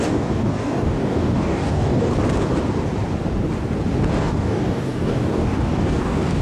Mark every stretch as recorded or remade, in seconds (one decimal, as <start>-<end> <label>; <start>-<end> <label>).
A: 0.0-2.1 remade; 2.1-4.1 recorded; 4.1-6.4 remade